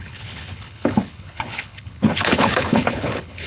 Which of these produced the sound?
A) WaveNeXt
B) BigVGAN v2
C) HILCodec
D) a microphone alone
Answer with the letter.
C